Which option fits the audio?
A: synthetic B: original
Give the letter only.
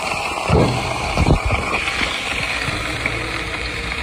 A